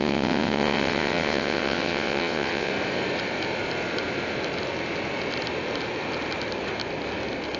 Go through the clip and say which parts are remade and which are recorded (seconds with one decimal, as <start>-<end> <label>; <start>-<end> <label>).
0.0-2.7 remade; 2.7-7.6 recorded